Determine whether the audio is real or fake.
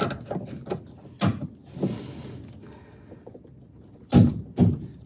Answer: real